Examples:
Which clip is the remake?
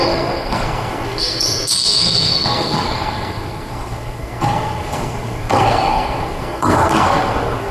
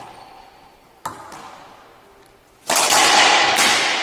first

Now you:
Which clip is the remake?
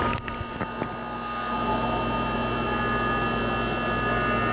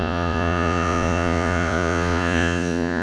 second